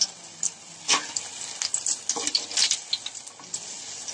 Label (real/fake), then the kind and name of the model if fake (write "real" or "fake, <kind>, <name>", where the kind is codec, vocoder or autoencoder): real